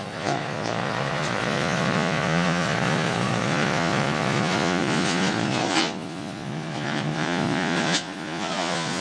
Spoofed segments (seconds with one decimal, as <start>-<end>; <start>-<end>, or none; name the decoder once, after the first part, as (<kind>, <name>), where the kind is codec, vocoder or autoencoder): 0.0-9.0 (vocoder, Vocos)